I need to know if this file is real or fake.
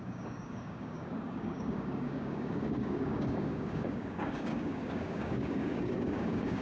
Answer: fake